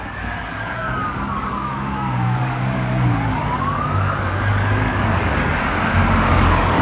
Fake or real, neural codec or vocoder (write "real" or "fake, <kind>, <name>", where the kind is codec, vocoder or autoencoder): fake, codec, DAC